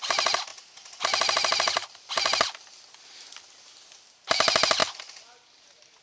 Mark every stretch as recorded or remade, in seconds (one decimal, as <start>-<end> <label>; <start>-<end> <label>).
0.0-6.0 recorded